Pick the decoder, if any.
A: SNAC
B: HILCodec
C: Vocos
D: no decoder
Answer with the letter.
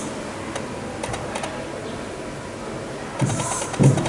D